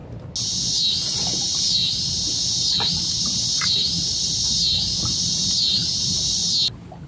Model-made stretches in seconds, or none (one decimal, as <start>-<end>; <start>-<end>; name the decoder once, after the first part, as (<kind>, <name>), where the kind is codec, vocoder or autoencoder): 0.9-6.4 (vocoder, BigVGAN v2)